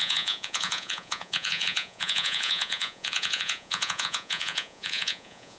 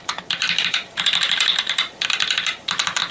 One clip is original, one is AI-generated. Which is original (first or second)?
second